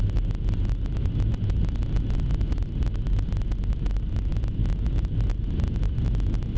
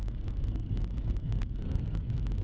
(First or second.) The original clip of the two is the first